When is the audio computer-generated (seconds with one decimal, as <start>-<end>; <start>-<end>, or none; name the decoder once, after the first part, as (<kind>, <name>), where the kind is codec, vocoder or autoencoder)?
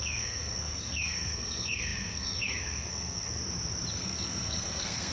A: 0.0-3.4 (codec, SNAC); 3.9-5.1